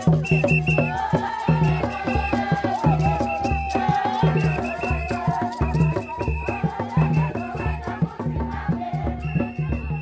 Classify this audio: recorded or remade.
recorded